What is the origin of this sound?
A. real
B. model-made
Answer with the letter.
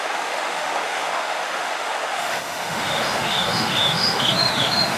B